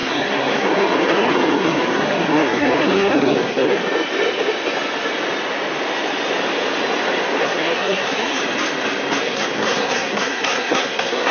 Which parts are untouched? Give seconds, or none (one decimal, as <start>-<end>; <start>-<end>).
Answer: 3.8-7.4; 8.4-9.2